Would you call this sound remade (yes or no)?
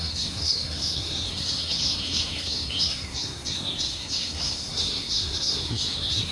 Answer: yes